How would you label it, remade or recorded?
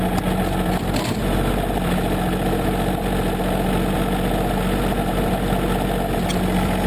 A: recorded